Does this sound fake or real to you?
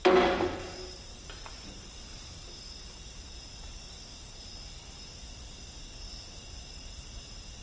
real